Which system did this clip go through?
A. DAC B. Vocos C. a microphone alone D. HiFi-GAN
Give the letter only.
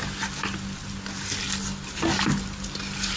C